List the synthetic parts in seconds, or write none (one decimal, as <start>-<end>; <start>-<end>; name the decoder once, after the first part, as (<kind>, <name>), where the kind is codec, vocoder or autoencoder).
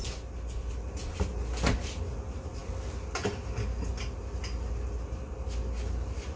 none